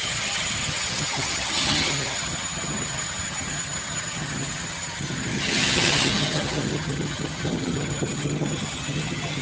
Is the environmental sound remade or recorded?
remade